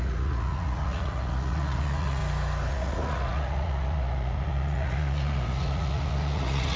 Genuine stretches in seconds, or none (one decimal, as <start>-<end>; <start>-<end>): 2.2-2.7